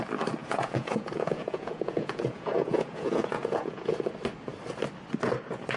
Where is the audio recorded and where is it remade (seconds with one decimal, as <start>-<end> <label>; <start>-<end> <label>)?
0.0-0.4 recorded; 0.4-3.9 remade; 3.9-5.8 recorded